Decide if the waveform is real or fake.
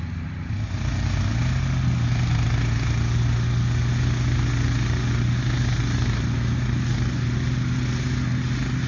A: real